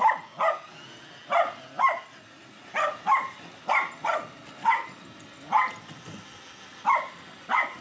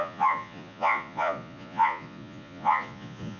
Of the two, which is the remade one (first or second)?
second